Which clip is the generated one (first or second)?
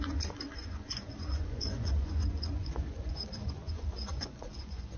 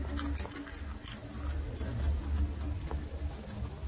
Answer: first